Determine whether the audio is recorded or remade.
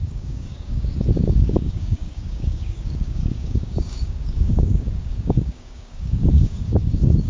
remade